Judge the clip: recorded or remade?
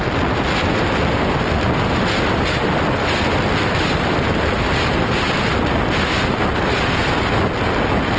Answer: recorded